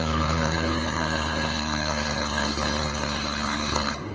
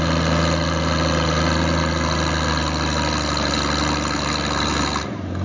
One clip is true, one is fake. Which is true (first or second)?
second